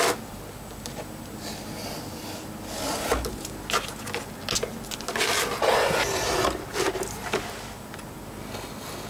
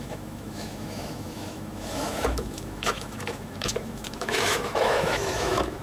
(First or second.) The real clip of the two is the first